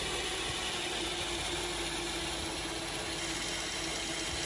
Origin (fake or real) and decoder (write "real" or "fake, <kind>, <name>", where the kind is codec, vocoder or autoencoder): real